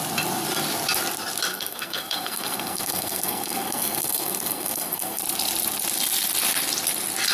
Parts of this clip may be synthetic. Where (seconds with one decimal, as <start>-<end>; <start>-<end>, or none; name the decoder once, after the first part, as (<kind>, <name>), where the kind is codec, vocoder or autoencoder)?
1.5-5.2 (codec, SNAC)